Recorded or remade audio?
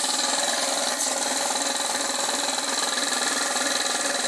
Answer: recorded